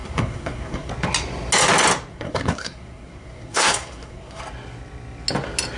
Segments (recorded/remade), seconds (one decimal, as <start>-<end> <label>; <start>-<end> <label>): 0.0-0.9 remade; 0.9-2.1 recorded; 2.1-4.4 remade; 4.4-5.8 recorded